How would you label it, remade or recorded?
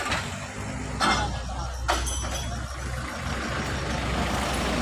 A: recorded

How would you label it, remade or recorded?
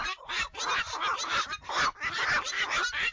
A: recorded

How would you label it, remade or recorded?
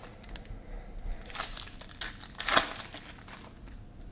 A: recorded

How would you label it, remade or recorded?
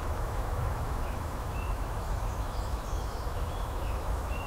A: remade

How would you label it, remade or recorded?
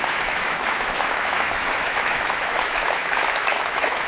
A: remade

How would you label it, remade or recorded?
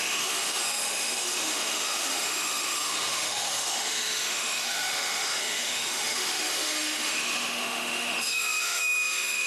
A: remade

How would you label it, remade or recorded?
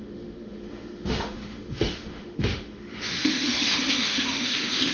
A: remade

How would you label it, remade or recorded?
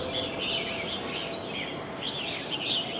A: recorded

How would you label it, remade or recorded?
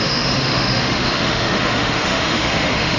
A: remade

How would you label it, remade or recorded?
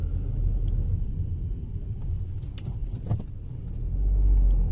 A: recorded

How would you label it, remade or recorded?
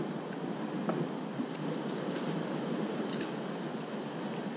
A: recorded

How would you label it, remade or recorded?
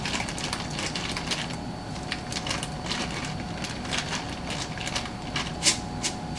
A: recorded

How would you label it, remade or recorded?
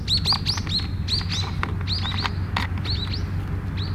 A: recorded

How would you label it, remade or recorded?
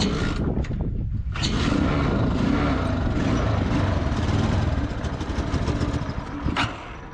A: recorded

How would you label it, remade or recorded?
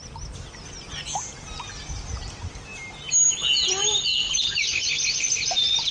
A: recorded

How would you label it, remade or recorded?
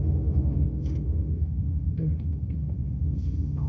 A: remade